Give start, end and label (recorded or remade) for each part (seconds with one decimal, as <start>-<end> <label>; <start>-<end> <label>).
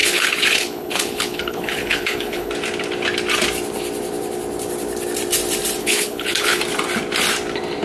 0.0-2.5 remade; 2.5-5.8 recorded; 5.8-6.6 remade; 6.6-7.8 recorded